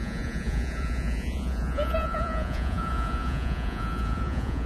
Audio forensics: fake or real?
fake